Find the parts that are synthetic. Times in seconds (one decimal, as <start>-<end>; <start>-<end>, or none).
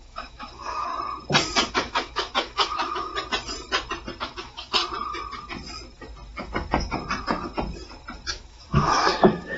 0.0-0.9; 1.7-3.1; 4.2-4.8; 8.3-9.6